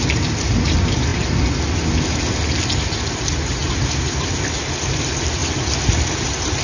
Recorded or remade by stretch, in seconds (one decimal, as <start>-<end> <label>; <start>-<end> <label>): 0.0-6.6 recorded